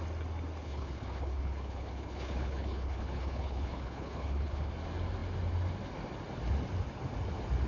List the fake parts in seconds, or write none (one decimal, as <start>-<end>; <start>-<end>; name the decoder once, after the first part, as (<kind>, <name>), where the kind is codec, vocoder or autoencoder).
0.6-4.7 (codec, HILCodec)